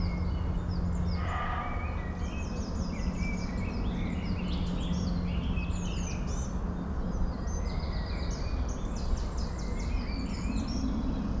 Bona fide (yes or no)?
yes